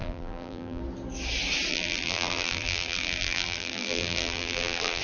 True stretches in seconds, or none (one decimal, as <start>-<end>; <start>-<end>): 0.8-1.7